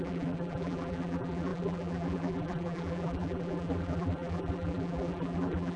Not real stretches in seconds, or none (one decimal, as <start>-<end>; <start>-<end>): 0.0-5.8